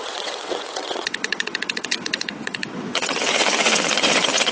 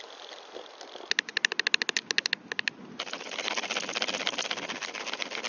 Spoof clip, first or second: first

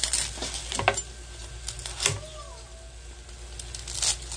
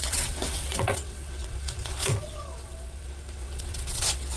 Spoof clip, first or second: second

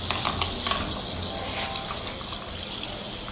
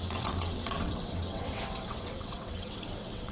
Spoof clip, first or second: second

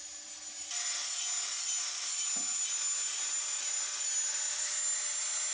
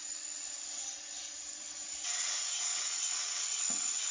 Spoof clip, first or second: second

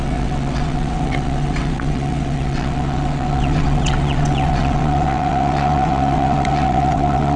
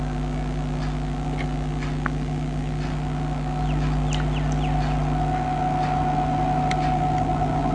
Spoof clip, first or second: first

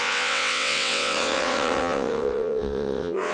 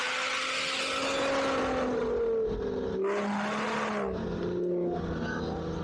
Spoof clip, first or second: first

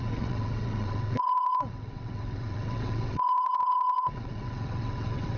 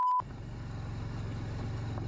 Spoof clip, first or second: first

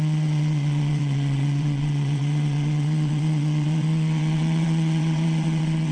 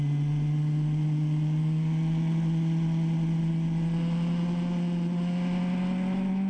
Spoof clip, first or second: first